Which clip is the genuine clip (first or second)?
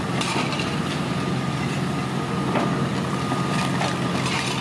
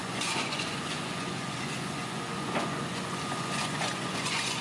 first